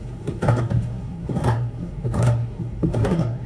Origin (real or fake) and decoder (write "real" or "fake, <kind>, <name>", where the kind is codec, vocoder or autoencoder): fake, codec, SNAC